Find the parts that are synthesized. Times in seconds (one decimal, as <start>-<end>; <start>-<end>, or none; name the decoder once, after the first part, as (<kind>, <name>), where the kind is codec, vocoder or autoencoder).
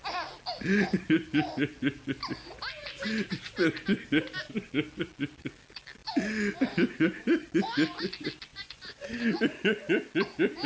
8.5-9.1 (vocoder, Vocos)